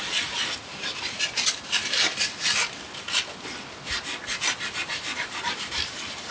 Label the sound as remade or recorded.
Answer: recorded